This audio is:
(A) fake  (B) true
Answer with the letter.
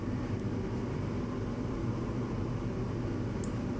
B